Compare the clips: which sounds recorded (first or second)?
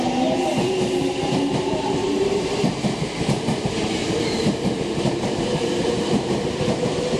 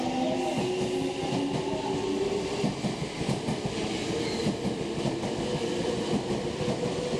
second